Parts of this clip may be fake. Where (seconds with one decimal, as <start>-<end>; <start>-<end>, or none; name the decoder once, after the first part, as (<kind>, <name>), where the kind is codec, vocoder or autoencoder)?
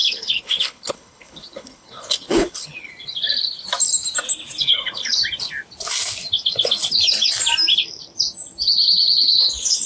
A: 0.0-2.9 (codec, HILCodec); 4.6-5.2; 9.4-9.9